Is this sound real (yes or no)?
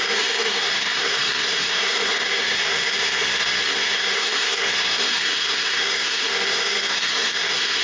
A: no